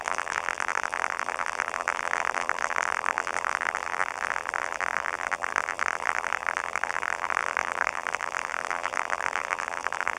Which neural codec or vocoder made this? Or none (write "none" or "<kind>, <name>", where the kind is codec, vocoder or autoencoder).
vocoder, BigVGAN v2